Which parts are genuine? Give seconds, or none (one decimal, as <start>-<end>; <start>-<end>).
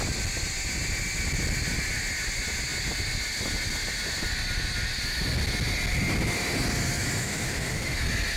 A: 0.0-7.2; 8.0-8.4